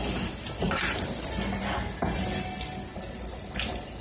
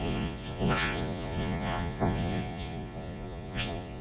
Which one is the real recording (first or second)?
first